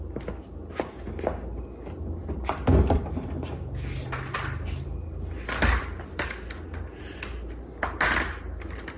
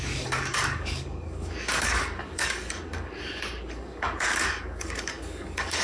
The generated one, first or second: second